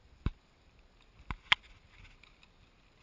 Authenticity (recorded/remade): recorded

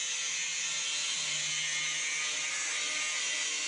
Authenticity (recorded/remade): recorded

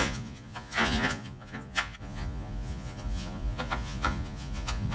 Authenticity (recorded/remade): remade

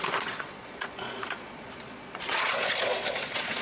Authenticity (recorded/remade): remade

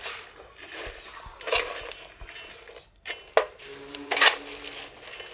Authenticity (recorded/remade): recorded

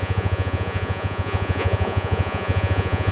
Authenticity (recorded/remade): remade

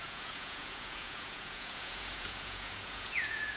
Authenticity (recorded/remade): remade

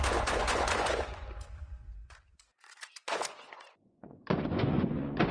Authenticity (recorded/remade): remade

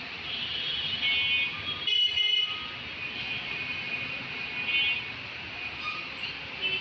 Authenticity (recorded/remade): recorded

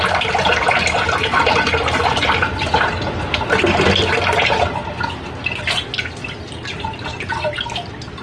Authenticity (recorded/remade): recorded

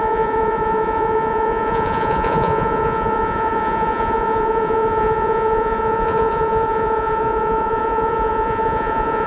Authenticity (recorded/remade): remade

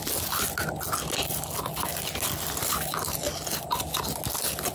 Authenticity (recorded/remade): recorded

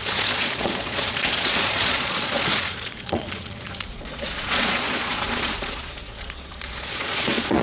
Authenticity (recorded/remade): remade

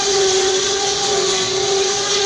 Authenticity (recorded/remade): remade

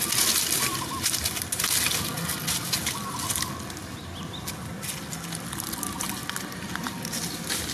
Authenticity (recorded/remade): recorded